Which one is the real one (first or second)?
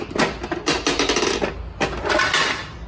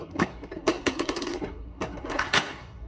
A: first